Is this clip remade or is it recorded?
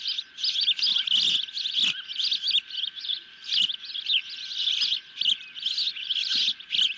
recorded